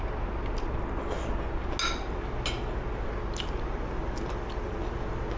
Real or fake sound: real